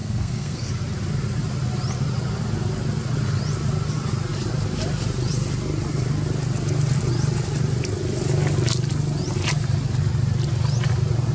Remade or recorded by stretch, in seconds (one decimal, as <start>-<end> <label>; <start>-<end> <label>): 0.0-0.7 remade; 0.7-11.3 recorded